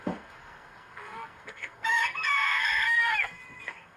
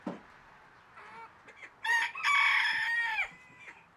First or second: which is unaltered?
second